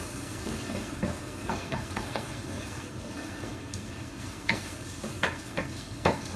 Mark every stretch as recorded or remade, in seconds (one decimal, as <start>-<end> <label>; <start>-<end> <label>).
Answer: 0.0-6.4 remade